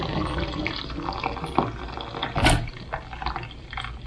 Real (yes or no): yes